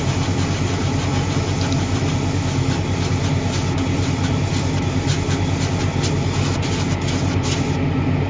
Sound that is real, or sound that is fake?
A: real